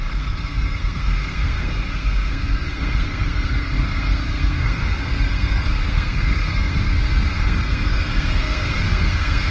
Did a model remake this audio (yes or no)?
yes